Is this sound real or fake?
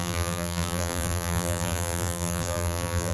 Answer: fake